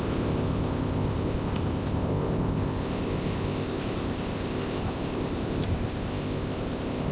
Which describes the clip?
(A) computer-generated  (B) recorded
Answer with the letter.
A